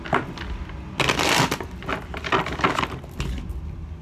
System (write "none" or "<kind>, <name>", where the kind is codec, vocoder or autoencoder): none